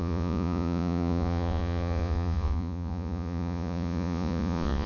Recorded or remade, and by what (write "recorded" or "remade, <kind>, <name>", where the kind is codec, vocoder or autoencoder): remade, vocoder, Vocos